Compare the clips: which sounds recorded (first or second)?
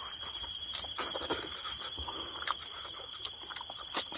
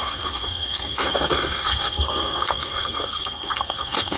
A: first